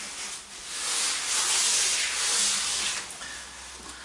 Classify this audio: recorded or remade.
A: recorded